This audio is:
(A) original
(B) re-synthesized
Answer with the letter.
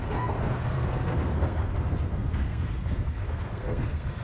B